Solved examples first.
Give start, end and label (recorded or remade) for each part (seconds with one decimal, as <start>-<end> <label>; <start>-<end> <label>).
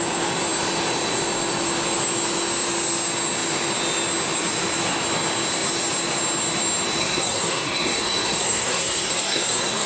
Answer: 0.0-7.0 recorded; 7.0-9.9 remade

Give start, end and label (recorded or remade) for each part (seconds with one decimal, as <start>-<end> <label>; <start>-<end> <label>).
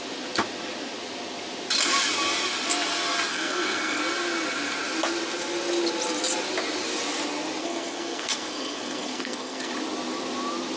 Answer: 0.0-3.3 recorded; 3.3-4.0 remade; 4.0-7.6 recorded; 7.6-9.7 remade; 9.7-10.8 recorded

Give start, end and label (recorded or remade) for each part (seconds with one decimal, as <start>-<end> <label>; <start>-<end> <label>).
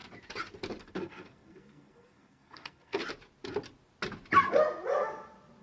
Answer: 0.0-0.8 recorded; 0.8-3.0 remade; 3.0-5.6 recorded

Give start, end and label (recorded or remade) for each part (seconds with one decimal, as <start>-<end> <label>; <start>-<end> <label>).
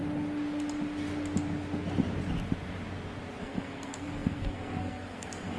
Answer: 0.0-3.4 recorded; 3.4-5.6 remade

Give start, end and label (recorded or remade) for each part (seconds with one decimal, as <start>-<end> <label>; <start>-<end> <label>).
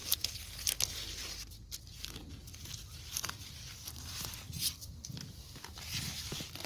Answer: 0.0-6.7 recorded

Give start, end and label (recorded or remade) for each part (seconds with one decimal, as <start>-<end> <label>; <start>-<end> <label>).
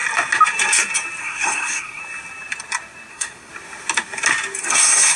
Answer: 0.0-1.2 recorded; 1.2-2.0 remade; 2.0-3.1 recorded; 3.1-3.5 remade; 3.5-4.6 recorded; 4.6-5.2 remade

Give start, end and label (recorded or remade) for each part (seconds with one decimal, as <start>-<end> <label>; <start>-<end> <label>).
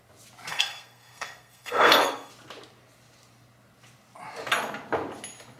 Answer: 0.0-0.5 recorded; 0.5-2.3 remade; 2.3-5.6 recorded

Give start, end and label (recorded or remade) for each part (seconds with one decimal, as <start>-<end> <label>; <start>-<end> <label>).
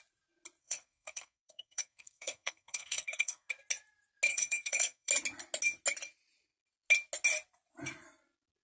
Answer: 0.0-0.6 recorded; 0.6-3.5 remade; 3.5-4.3 recorded; 4.3-5.1 remade; 5.1-8.6 recorded